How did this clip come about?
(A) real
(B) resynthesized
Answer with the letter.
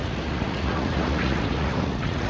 B